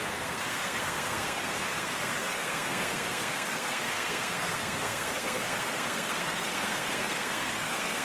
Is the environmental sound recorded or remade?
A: remade